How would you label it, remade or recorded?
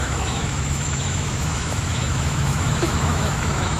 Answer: remade